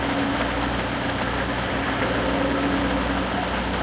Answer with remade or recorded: recorded